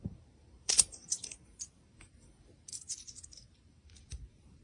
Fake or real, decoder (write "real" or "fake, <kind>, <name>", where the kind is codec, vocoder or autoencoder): fake, vocoder, BigVGAN v2